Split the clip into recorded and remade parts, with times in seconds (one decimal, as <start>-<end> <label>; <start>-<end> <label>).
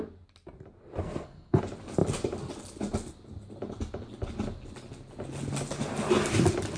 0.0-1.0 recorded; 1.0-1.6 remade; 1.6-6.8 recorded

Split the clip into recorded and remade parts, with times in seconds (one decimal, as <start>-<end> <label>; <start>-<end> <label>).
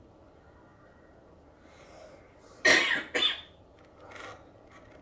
0.0-5.0 recorded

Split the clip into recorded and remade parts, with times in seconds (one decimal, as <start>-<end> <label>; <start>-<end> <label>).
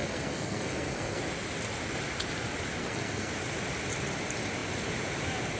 0.0-1.2 remade; 1.2-2.8 recorded; 2.8-3.3 remade; 3.3-5.6 recorded